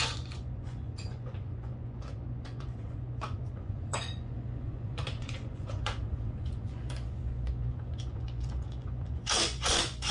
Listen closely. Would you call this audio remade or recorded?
remade